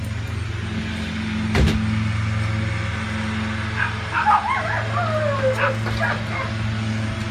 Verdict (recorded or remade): recorded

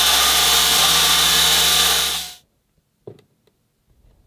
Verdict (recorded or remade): recorded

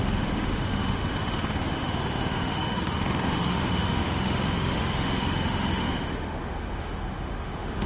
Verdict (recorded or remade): remade